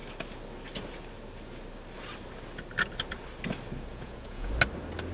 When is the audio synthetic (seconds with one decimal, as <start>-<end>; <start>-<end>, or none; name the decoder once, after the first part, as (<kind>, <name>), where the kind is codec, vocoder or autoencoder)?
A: 3.9-4.5 (vocoder, Vocos)